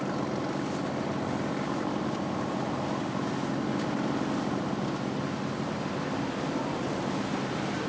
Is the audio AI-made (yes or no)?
no